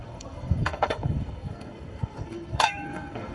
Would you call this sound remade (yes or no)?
yes